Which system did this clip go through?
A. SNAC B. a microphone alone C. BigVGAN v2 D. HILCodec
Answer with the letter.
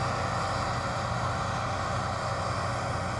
B